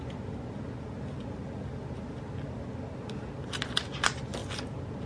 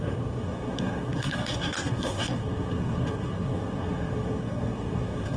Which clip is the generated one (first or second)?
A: second